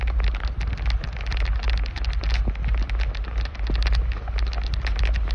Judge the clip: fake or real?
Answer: real